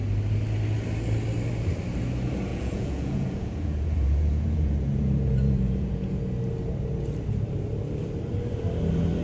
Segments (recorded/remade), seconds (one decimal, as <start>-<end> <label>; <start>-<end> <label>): 0.0-2.5 recorded; 2.5-6.2 remade; 6.2-9.2 recorded